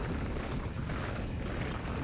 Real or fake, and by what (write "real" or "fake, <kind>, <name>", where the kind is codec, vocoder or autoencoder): real